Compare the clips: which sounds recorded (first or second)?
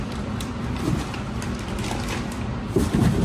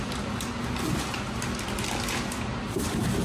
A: second